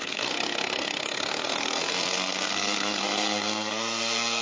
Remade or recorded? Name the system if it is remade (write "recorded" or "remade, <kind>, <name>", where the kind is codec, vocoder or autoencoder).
remade, codec, SNAC